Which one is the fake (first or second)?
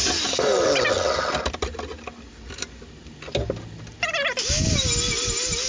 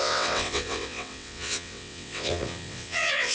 second